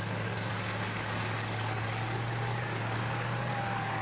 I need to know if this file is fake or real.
fake